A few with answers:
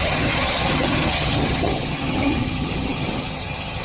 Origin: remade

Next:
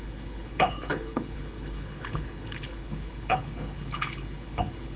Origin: remade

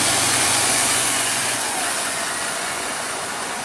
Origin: remade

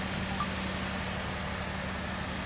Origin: recorded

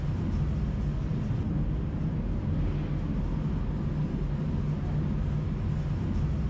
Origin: recorded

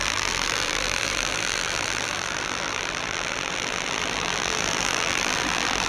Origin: remade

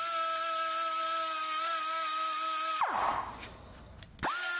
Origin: recorded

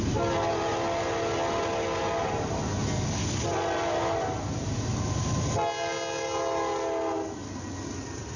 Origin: recorded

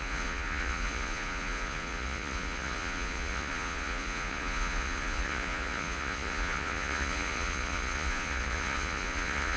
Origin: remade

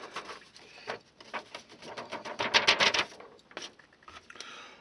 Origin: recorded